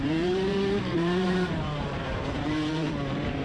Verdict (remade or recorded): remade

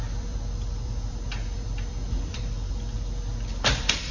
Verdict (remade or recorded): remade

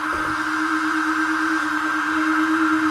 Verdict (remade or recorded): remade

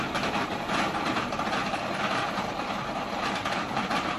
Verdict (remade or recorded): remade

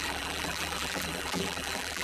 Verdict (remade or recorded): remade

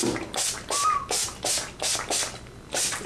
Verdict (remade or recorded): recorded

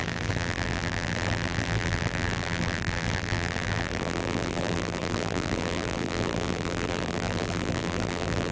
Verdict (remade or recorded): remade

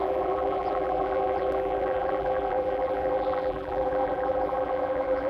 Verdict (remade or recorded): remade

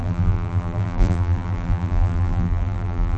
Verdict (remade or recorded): remade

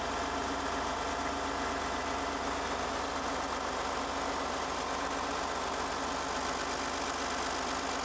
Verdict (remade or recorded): recorded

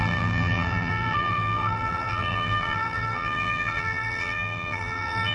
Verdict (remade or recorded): remade